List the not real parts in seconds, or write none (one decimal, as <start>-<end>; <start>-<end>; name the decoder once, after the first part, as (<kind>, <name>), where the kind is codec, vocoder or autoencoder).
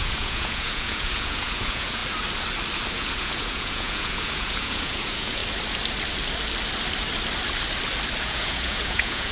0.0-2.0 (vocoder, Vocos); 2.9-5.4; 8.2-9.3